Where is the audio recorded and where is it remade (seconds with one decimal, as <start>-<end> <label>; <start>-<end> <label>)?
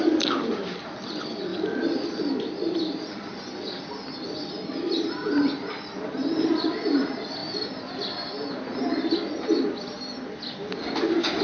0.0-11.4 recorded